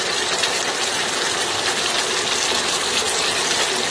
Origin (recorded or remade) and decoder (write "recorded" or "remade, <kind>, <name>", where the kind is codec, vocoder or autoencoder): recorded